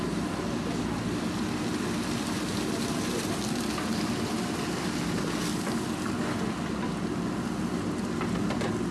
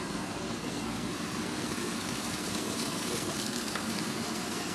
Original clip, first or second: first